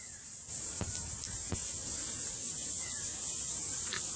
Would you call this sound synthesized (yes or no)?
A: no